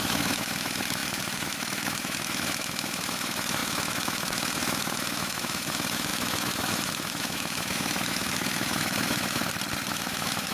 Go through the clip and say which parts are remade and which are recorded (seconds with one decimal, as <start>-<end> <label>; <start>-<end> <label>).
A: 0.0-9.4 remade; 9.4-9.9 recorded; 9.9-10.5 remade